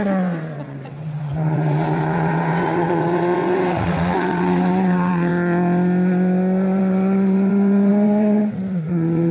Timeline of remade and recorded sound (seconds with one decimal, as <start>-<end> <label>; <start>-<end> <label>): 0.0-5.3 remade; 5.3-6.8 recorded; 6.8-9.3 remade